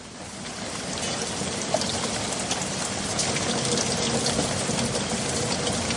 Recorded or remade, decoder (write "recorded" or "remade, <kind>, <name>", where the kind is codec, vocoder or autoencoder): recorded